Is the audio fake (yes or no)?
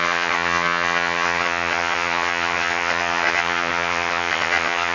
yes